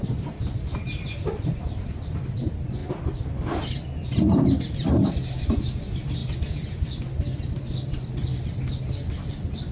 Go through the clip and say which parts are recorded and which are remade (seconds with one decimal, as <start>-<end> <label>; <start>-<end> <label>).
0.0-9.7 recorded